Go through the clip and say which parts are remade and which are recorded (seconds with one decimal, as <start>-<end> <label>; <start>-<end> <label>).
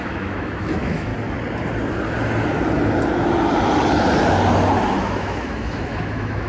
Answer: 0.0-1.1 remade; 1.1-5.0 recorded; 5.0-6.5 remade